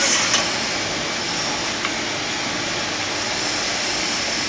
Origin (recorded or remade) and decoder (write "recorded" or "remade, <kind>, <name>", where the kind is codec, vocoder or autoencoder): recorded